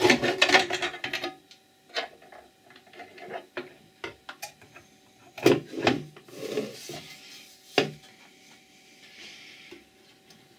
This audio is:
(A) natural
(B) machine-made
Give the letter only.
A